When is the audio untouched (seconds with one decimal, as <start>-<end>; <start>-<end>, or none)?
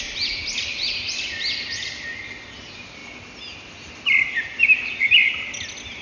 0.0-6.0